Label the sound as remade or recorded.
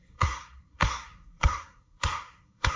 remade